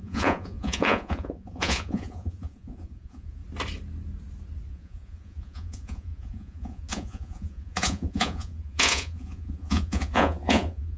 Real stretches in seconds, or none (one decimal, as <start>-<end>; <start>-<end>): 3.4-4.7